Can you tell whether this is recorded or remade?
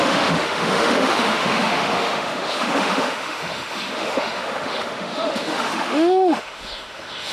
remade